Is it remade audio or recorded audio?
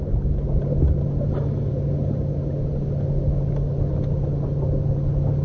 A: recorded